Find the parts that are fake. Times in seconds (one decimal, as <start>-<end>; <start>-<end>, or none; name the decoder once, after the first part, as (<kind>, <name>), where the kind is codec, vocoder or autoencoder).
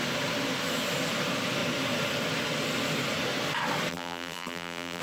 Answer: 3.9-5.0 (vocoder, BigVGAN v2)